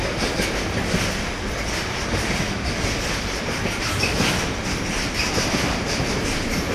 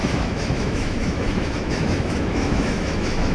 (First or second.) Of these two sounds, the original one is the first